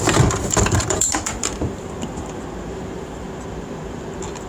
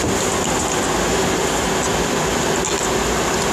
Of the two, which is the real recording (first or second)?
second